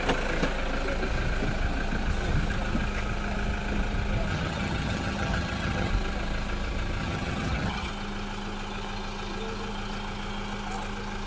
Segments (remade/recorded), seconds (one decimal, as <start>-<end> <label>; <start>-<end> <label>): 0.0-4.3 recorded; 4.3-5.9 remade; 5.9-7.0 recorded; 7.0-7.9 remade; 7.9-11.3 recorded